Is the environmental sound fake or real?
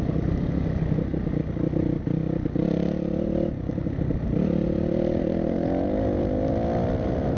real